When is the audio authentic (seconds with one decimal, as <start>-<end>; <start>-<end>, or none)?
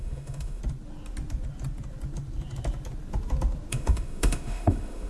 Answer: 0.6-3.7